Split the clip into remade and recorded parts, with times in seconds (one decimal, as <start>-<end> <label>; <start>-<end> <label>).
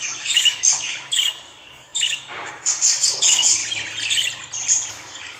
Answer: 0.0-3.6 remade; 3.6-4.9 recorded; 4.9-5.4 remade